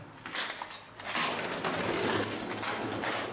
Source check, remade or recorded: recorded